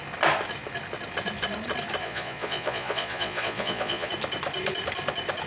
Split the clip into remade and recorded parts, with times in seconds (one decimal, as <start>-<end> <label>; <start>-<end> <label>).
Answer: 0.0-2.0 recorded; 2.0-4.1 remade; 4.1-5.5 recorded